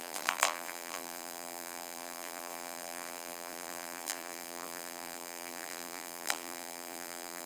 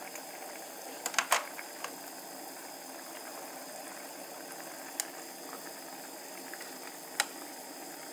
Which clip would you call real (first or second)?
second